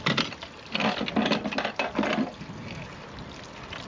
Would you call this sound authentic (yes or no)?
yes